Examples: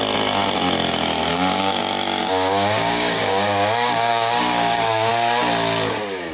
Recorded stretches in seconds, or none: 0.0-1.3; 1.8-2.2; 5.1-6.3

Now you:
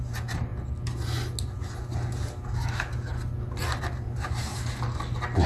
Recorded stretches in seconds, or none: 0.5-3.8; 4.5-5.5

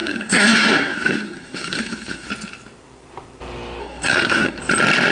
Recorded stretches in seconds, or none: 2.3-3.8; 4.6-5.1